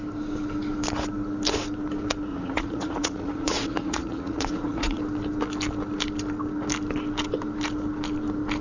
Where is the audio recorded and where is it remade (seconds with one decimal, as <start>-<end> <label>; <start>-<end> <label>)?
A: 0.0-2.3 recorded; 2.3-5.0 remade; 5.0-8.6 recorded